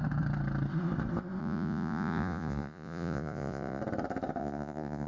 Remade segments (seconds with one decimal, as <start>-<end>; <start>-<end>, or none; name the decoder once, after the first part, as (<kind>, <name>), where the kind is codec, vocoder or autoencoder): 1.4-3.8 (vocoder, Vocos); 4.4-5.1